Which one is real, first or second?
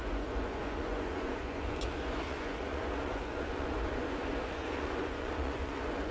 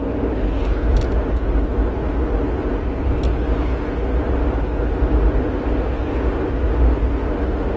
second